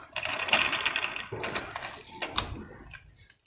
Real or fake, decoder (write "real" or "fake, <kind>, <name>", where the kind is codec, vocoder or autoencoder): real